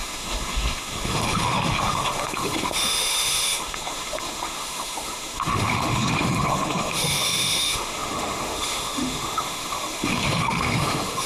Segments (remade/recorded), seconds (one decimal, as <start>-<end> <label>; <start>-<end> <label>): 0.0-11.3 remade